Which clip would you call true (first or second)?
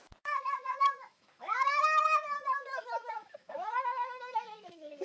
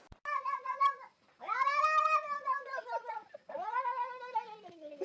second